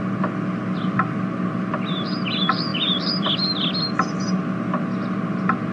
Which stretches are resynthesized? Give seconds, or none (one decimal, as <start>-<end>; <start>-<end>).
2.7-3.3